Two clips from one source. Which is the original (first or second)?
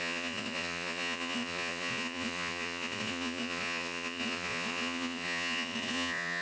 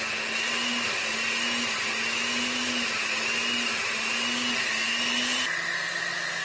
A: second